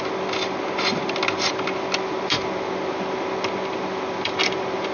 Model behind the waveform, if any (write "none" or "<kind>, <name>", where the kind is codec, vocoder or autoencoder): none